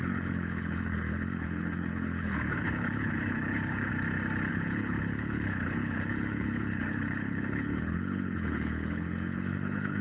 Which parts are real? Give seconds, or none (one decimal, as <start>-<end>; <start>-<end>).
3.9-4.5

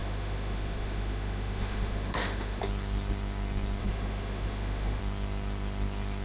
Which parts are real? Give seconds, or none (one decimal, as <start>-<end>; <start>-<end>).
2.6-3.8; 5.0-6.2